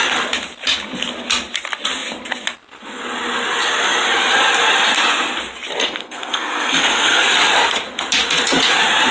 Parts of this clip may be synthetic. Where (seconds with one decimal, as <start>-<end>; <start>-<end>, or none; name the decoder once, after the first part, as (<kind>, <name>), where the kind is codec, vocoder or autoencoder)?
5.8-7.2 (codec, SNAC)